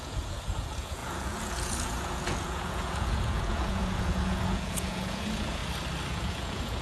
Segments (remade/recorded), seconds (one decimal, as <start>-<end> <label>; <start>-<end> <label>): 0.0-5.6 remade; 5.6-6.1 recorded; 6.1-6.8 remade